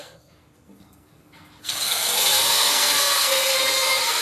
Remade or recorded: remade